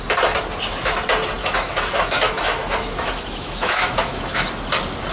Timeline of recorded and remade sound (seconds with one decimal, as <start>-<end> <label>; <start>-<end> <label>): 0.0-1.4 recorded; 1.4-4.5 remade; 4.5-5.1 recorded